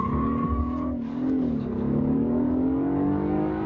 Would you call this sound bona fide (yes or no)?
no